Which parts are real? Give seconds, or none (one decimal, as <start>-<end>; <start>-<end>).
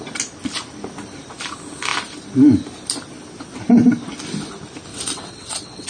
0.0-4.9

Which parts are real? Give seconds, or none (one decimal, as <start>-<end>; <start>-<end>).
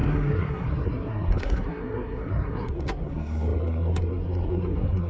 none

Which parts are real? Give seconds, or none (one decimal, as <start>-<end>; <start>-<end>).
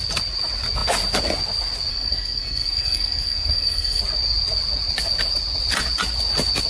0.0-1.9; 4.0-6.7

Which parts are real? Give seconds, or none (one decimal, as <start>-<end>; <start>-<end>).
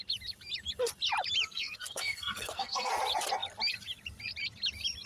0.0-1.5; 2.9-5.1